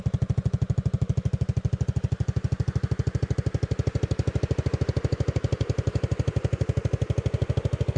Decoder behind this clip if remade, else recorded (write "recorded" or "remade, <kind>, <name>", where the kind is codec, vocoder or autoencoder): recorded